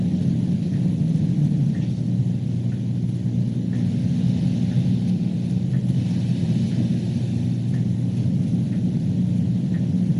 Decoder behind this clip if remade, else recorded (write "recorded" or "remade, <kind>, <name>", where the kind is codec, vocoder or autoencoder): recorded